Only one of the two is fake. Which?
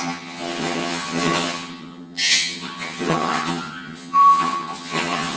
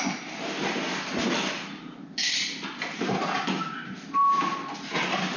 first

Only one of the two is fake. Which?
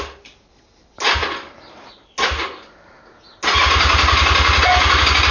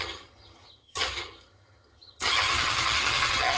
second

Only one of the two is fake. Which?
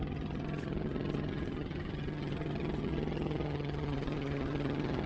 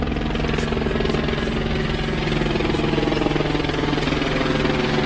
first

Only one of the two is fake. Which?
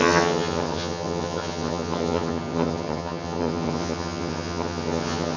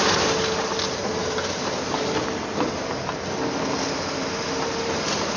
first